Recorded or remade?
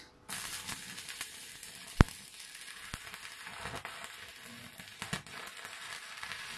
recorded